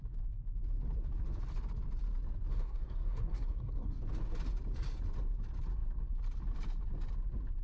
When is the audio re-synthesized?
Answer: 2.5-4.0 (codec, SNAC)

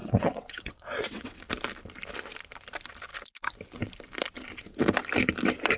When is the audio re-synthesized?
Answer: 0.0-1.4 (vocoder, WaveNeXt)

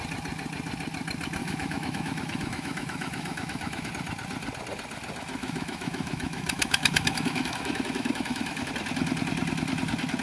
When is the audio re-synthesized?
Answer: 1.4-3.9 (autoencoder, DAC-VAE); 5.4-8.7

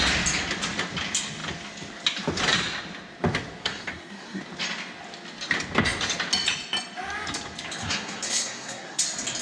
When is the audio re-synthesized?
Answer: 3.6-4.4 (codec, SNAC); 7.8-9.0

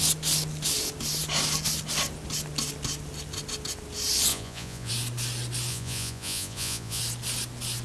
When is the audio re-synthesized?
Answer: 4.3-4.9 (vocoder, Vocos); 5.7-7.0